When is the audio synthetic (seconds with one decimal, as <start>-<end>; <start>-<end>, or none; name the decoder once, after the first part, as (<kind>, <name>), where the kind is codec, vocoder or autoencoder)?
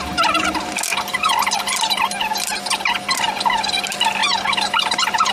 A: none